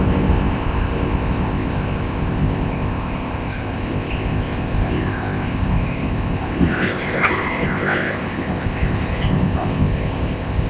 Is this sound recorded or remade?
remade